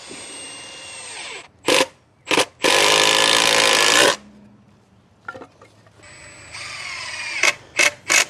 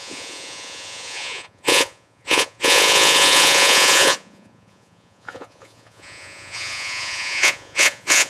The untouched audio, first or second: first